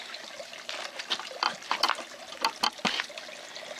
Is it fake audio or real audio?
real